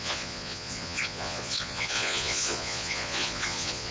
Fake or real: fake